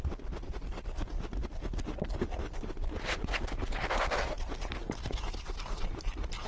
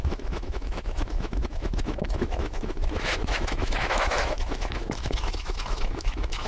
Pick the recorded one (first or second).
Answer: first